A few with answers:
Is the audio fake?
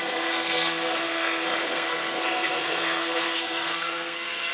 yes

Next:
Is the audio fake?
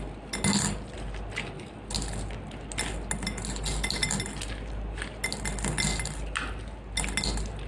no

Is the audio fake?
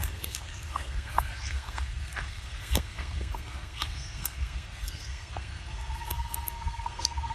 yes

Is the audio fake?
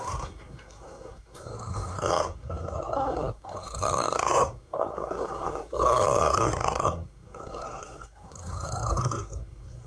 yes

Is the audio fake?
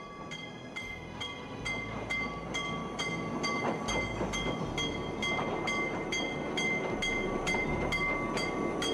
no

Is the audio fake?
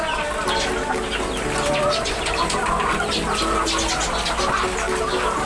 no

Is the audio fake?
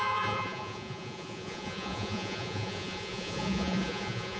yes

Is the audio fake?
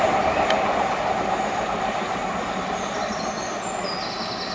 no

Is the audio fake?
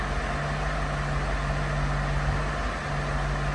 no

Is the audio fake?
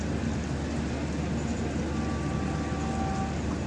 no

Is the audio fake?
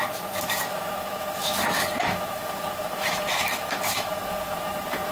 yes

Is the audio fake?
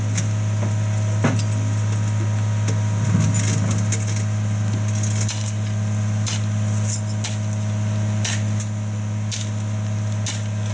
no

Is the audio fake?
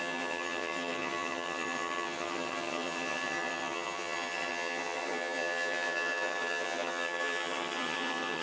yes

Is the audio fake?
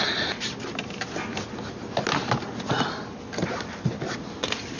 no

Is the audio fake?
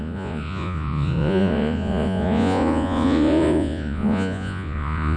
yes